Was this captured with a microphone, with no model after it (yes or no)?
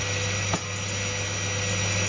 yes